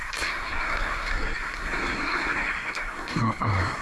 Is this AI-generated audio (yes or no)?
yes